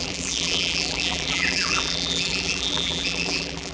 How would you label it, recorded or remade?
remade